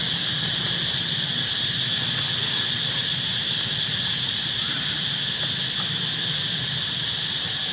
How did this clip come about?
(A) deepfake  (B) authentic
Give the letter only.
B